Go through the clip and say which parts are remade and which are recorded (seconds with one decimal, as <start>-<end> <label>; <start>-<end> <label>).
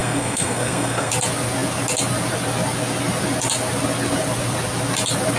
0.0-1.1 remade; 1.1-5.4 recorded